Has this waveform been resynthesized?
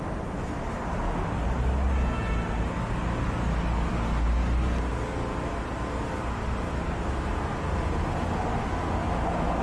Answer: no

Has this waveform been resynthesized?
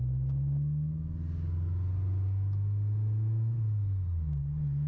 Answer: no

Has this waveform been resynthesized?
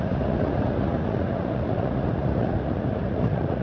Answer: yes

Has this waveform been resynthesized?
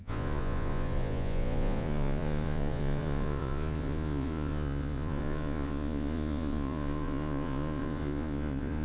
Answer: yes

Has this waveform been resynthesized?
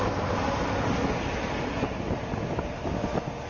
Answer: no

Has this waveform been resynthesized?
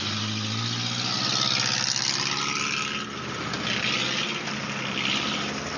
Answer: no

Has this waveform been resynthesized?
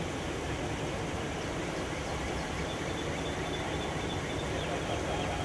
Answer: no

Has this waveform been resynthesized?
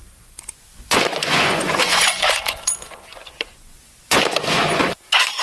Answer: yes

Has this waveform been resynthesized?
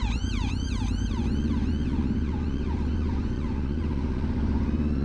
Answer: yes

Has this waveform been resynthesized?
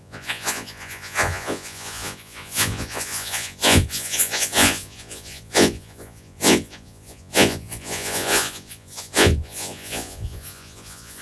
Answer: yes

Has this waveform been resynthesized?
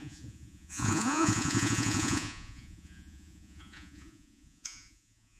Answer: yes